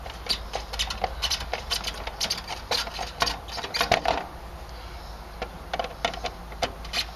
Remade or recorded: recorded